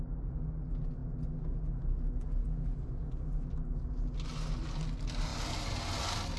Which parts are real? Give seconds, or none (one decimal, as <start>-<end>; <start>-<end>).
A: 0.0-6.4